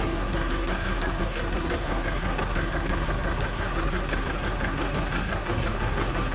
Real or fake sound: fake